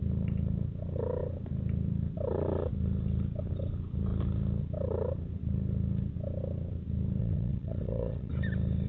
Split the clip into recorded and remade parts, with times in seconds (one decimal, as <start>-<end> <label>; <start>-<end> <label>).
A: 0.0-7.2 recorded; 7.2-8.3 remade; 8.3-8.9 recorded